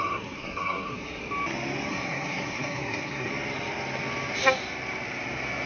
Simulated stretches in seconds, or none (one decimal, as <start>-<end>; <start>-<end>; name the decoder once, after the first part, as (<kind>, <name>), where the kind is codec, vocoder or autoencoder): 0.0-1.2 (codec, SNAC); 1.9-3.3